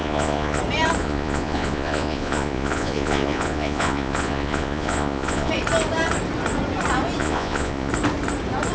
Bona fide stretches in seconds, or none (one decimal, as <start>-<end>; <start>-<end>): 0.6-1.0; 5.5-7.2; 7.9-8.7

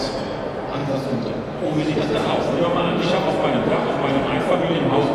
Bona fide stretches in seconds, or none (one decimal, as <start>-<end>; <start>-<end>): 0.0-5.1

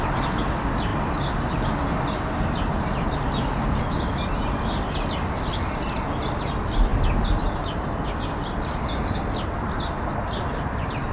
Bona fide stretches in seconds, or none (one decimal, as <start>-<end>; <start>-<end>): 0.0-11.1

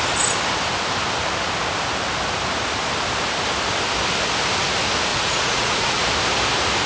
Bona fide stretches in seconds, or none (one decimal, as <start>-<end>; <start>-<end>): 0.0-5.1; 6.0-6.9

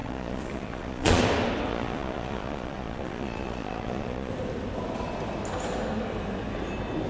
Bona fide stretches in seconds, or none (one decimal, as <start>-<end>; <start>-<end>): 1.2-1.7; 4.3-7.1

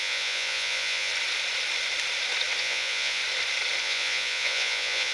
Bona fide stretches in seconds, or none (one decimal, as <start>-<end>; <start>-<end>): 1.1-2.6; 3.2-3.8

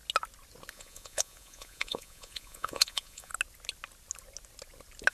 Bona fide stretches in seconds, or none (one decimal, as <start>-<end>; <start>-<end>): 0.0-0.7; 3.3-5.1

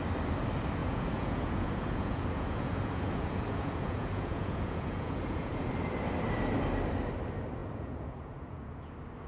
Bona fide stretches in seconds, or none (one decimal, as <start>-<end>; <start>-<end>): 0.0-0.8; 5.7-7.6; 8.9-9.3